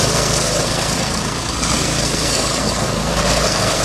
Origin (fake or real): fake